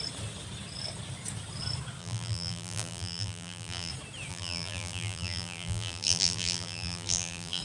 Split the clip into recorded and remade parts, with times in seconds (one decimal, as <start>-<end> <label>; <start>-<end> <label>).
0.0-2.0 recorded; 2.0-3.9 remade; 3.9-4.3 recorded; 4.3-7.6 remade